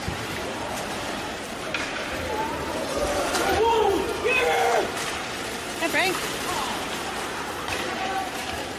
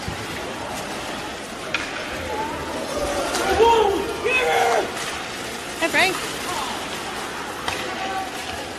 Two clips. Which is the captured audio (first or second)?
second